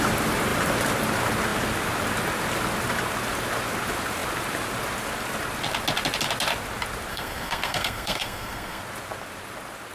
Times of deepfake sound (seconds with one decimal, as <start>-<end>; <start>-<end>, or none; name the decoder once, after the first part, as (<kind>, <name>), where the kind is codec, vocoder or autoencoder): 7.1-8.8 (codec, SNAC)